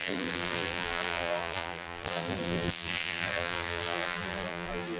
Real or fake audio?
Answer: fake